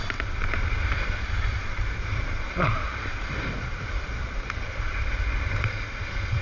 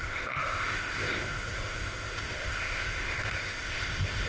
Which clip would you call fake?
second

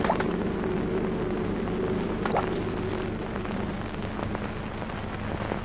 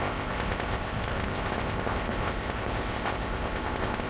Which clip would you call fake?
second